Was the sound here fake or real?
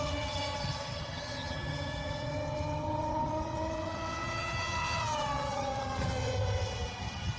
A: fake